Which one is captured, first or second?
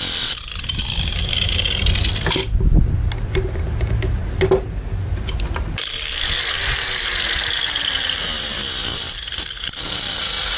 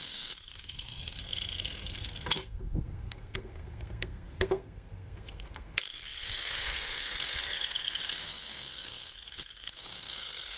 first